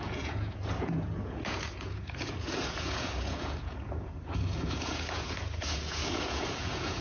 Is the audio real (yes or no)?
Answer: no